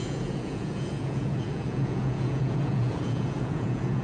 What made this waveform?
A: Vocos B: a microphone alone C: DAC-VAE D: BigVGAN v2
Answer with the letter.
A